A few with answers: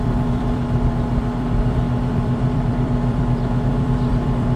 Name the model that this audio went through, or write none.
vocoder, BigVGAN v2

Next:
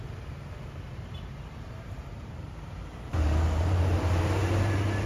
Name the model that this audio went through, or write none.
vocoder, BigVGAN v2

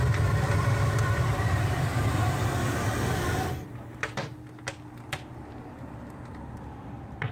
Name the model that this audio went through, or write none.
vocoder, BigVGAN v2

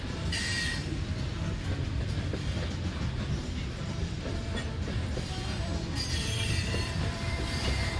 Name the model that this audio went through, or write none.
vocoder, BigVGAN v2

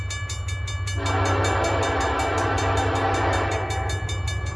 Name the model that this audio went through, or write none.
none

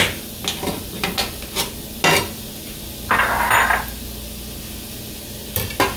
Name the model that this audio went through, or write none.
none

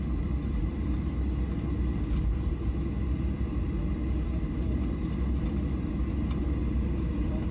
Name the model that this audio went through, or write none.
none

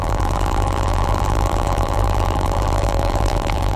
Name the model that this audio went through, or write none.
vocoder, BigVGAN v2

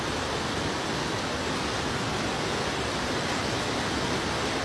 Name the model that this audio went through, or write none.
none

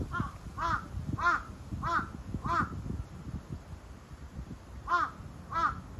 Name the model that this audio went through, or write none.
none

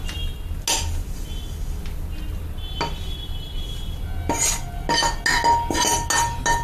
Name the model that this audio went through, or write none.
none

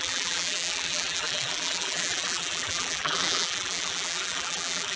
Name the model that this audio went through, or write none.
vocoder, BigVGAN v2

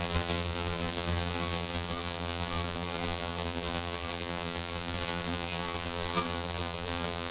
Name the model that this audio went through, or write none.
vocoder, BigVGAN v2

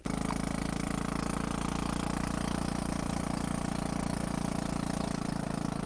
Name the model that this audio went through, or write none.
none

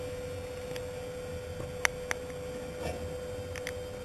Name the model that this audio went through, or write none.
none